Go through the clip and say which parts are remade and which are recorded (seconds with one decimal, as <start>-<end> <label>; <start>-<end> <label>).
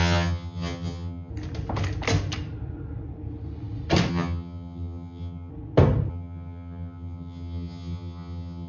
0.0-1.3 remade; 1.3-4.1 recorded; 4.1-5.5 remade; 5.5-6.1 recorded; 6.1-8.7 remade